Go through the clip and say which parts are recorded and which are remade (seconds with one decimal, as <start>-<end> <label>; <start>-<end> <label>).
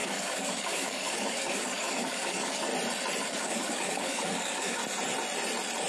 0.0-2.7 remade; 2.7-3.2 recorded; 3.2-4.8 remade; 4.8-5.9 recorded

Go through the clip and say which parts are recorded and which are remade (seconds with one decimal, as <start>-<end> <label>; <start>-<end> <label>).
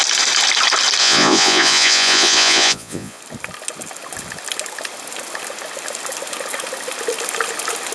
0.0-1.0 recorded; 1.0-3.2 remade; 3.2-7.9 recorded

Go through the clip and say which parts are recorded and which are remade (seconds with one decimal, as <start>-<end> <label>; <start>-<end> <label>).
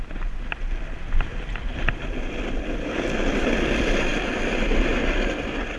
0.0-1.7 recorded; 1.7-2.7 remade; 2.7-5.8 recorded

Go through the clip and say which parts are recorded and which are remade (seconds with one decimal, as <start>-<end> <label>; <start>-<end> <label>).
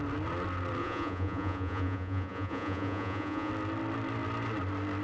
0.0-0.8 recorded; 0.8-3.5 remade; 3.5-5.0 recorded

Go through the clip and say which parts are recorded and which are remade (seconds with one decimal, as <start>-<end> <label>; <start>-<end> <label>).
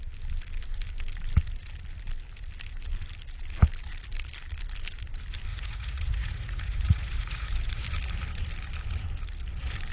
0.0-5.5 recorded; 5.5-7.8 remade; 7.8-9.9 recorded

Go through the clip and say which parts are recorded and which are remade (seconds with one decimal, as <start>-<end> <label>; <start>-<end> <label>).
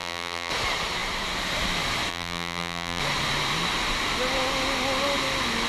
0.0-0.5 remade; 0.5-2.1 recorded; 2.1-3.0 remade; 3.0-5.7 recorded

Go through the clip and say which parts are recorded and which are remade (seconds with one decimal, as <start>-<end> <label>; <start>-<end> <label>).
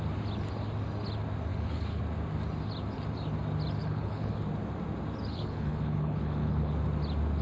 0.0-1.5 recorded; 1.5-2.0 remade; 2.0-3.8 recorded; 3.8-4.3 remade; 4.3-5.3 recorded; 5.3-6.7 remade; 6.7-7.4 recorded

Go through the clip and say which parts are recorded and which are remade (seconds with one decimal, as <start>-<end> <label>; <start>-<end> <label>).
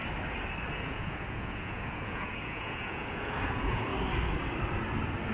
0.0-0.7 recorded; 0.7-3.9 remade; 3.9-5.3 recorded